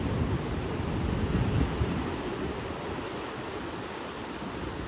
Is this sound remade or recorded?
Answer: recorded